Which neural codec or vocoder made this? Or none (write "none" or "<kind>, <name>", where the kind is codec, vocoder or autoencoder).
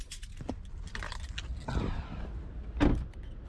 none